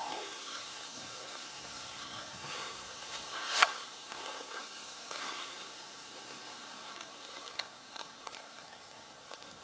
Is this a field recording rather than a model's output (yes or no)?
no